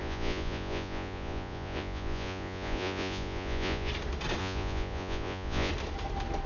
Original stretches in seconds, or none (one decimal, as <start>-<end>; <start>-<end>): 3.9-4.4; 5.7-6.5